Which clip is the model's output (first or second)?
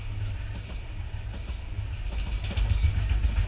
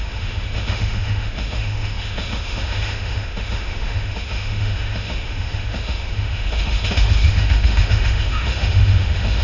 second